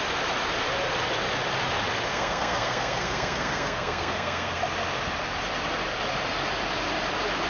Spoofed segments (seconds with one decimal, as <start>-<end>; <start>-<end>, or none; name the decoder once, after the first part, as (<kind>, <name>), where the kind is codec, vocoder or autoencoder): 2.1-4.6 (codec, SNAC)